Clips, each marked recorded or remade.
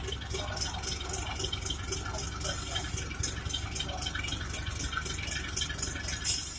recorded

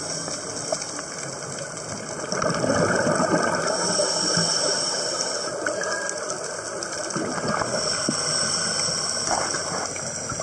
recorded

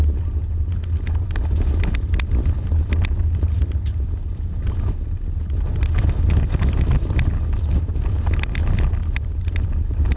recorded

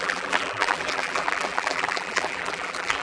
remade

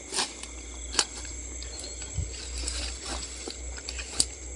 recorded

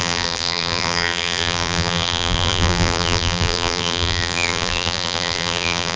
remade